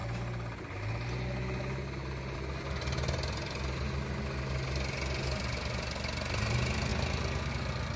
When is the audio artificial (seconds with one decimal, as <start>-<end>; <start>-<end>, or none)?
none